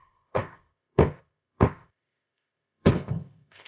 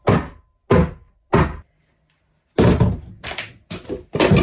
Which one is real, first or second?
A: second